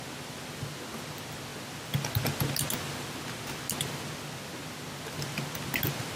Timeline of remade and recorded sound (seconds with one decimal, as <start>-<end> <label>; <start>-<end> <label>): 0.0-6.2 recorded